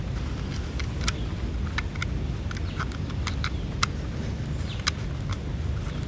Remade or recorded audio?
recorded